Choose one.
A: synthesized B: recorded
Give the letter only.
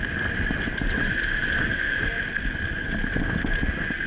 B